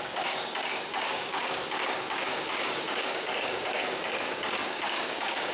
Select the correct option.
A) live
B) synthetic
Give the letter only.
B